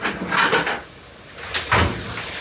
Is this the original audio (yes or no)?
yes